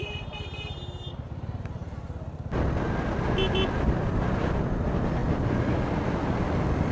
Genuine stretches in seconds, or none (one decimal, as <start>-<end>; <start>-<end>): 0.0-6.9